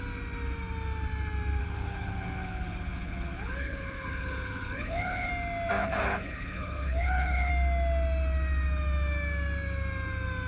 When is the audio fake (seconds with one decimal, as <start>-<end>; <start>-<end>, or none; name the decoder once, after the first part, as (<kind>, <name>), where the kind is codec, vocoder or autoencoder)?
1.6-5.3 (codec, HILCodec); 5.8-7.5